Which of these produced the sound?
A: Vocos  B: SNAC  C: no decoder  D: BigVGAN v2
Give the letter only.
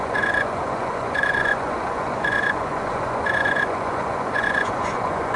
A